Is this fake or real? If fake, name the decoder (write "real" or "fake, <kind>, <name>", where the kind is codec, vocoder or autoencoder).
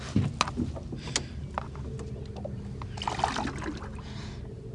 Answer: real